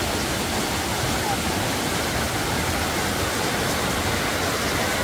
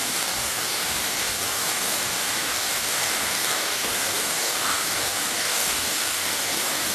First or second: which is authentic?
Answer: first